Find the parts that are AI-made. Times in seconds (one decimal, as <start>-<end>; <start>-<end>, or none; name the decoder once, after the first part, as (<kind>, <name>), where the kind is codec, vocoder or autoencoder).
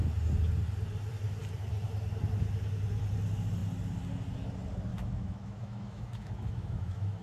4.9-7.2 (autoencoder, DAC-VAE)